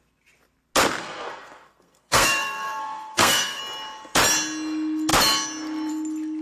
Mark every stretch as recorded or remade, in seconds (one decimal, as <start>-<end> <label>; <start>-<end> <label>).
0.0-1.0 recorded; 1.0-3.6 remade; 3.6-6.4 recorded